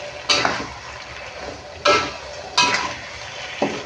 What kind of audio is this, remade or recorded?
recorded